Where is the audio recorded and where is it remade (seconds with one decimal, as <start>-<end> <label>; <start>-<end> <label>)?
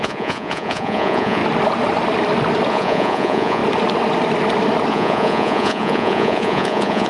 0.0-1.4 remade; 1.4-2.7 recorded; 2.7-3.6 remade; 3.6-4.9 recorded; 4.9-7.1 remade